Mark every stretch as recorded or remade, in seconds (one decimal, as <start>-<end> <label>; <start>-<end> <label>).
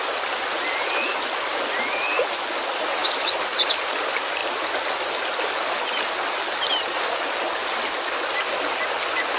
0.0-9.4 recorded